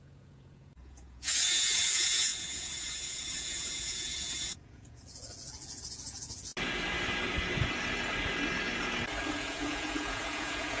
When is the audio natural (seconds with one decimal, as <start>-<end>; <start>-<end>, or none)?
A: 6.5-9.3